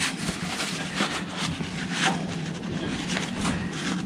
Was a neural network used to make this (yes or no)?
yes